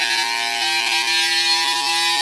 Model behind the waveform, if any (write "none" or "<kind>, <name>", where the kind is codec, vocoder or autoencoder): none